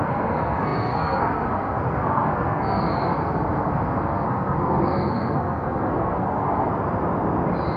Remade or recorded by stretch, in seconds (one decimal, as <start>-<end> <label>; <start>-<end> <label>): 0.0-6.7 remade; 6.7-7.8 recorded